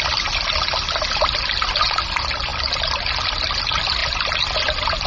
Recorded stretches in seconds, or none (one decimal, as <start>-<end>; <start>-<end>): 0.0-5.1

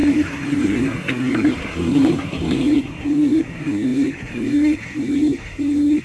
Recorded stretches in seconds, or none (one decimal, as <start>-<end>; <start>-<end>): none

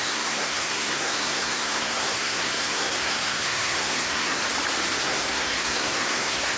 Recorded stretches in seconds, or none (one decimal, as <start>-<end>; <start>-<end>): 4.4-5.0

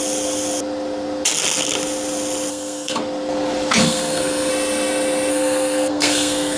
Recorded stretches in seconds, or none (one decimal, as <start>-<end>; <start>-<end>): 0.0-2.5; 3.0-3.8; 4.5-5.3

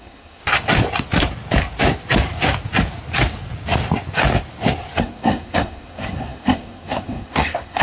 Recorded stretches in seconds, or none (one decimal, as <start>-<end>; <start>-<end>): 0.4-5.0

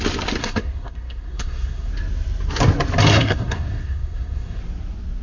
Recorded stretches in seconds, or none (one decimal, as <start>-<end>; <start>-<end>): 0.0-0.4; 1.9-3.1; 4.6-5.2

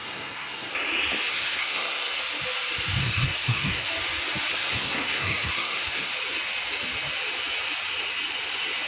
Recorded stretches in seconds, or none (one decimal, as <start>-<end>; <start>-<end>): 0.7-1.3; 2.2-3.0; 3.9-4.5; 6.1-8.9